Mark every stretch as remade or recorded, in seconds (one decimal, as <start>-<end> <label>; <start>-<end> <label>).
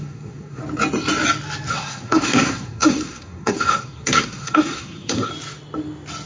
0.0-0.6 remade; 0.6-1.7 recorded; 1.7-5.3 remade; 5.3-6.3 recorded